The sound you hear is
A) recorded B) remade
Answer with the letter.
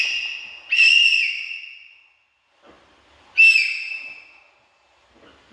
A